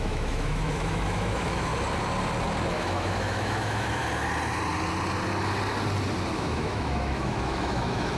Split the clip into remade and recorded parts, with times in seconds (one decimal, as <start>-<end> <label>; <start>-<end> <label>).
0.0-1.7 remade; 1.7-2.7 recorded; 2.7-4.0 remade; 4.0-6.3 recorded; 6.3-8.2 remade